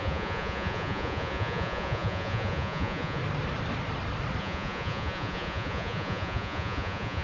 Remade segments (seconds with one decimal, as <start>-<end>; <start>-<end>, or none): 0.0-3.2; 4.4-7.2